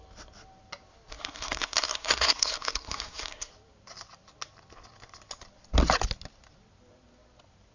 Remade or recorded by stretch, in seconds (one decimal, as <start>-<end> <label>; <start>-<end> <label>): 0.0-1.1 recorded; 1.1-3.5 remade; 3.5-7.7 recorded